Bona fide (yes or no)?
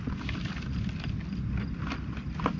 yes